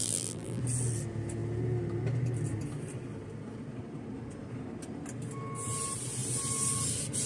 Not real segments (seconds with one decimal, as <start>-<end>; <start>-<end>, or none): 0.0-0.6